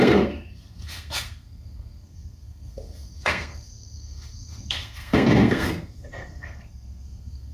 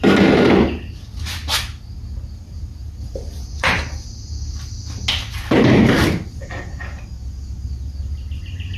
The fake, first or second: first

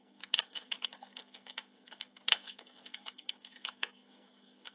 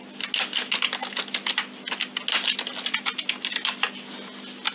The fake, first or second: first